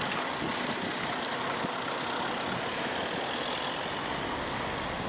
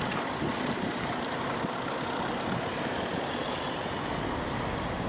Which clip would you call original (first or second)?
first